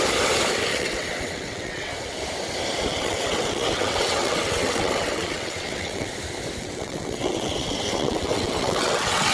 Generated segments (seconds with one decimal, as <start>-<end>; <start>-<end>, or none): 0.7-1.9; 2.9-6.1; 6.6-9.3